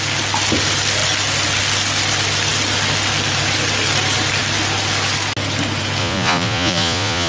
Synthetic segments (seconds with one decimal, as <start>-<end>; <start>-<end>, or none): 6.0-7.3